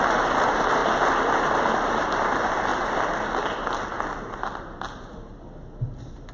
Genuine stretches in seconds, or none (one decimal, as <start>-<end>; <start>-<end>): 0.0-6.3